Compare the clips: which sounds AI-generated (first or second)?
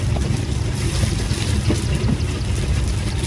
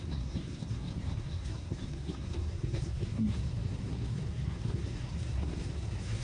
second